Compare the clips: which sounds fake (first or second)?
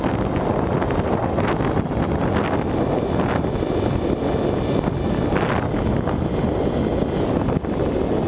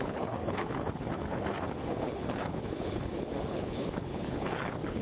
second